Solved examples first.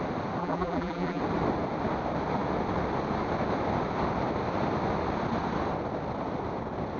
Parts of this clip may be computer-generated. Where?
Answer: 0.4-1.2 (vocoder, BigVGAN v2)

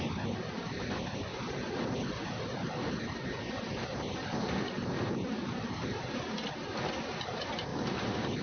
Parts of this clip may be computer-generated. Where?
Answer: 1.3-6.2 (vocoder, BigVGAN v2); 7.7-8.4

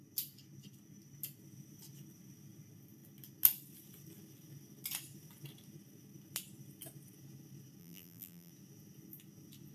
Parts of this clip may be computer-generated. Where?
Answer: 7.8-8.5 (vocoder, BigVGAN v2)

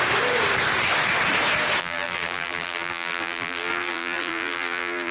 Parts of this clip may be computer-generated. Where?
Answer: 1.8-5.1 (vocoder, BigVGAN v2)